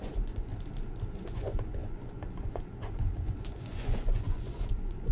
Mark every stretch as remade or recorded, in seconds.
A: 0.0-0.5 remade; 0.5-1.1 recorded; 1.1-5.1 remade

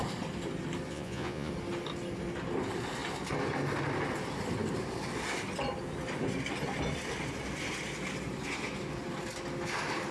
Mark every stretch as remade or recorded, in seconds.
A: 0.0-0.9 recorded; 0.9-1.5 remade; 1.5-10.1 recorded

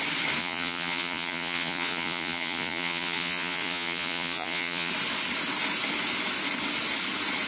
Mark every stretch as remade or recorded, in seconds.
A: 0.0-0.4 recorded; 0.4-4.9 remade; 4.9-7.5 recorded

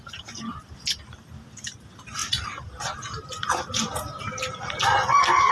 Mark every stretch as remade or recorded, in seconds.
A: 0.0-5.5 recorded